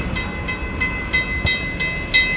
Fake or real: real